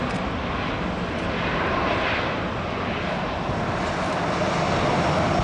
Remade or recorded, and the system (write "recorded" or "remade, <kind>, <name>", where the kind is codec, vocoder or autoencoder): recorded